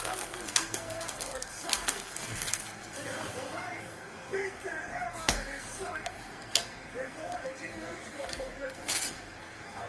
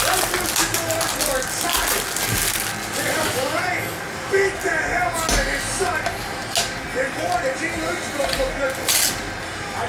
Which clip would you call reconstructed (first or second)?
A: first